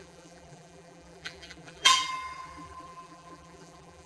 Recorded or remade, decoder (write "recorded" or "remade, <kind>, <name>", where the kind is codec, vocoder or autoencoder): remade, vocoder, BigVGAN v2